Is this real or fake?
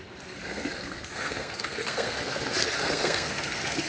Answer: fake